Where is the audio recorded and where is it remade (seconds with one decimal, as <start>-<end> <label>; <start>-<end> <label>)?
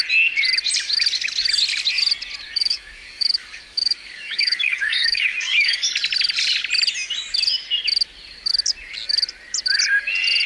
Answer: 0.0-2.6 recorded; 2.6-5.9 remade; 5.9-10.5 recorded